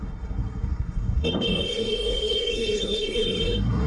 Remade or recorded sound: remade